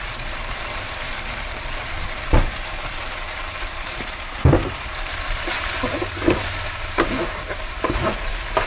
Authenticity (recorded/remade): remade